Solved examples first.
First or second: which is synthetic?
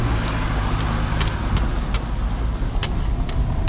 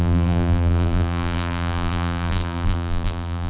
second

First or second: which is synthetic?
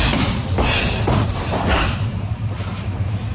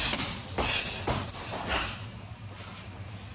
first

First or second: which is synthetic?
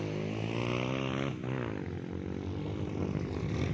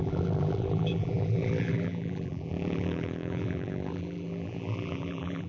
second